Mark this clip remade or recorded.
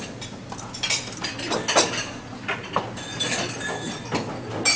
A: recorded